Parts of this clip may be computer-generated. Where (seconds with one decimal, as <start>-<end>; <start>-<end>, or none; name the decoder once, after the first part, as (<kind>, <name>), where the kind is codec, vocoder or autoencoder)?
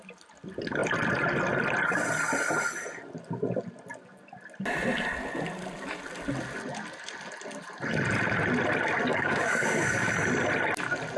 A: 9.1-10.1 (codec, DAC)